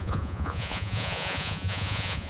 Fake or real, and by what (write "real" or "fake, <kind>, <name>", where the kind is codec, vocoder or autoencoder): fake, vocoder, Vocos